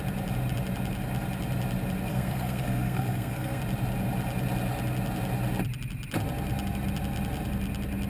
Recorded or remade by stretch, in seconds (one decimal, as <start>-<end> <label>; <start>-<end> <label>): 0.0-2.1 recorded; 2.1-3.6 remade; 3.6-8.1 recorded